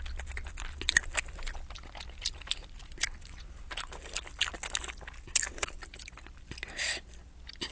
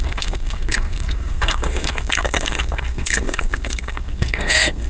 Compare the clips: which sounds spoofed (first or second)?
second